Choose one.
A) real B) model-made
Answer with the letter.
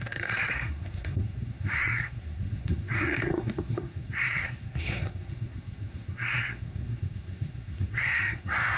B